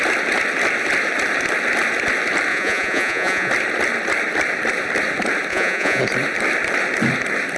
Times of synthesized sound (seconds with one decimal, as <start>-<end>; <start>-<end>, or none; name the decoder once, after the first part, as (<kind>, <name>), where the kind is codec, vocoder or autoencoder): 2.5-3.5 (vocoder, Vocos); 5.5-6.0